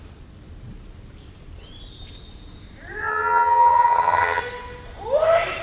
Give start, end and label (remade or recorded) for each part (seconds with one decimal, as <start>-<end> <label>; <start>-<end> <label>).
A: 0.0-3.1 recorded; 3.1-4.4 remade; 4.4-5.6 recorded